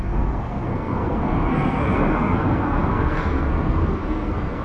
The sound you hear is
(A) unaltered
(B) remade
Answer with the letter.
B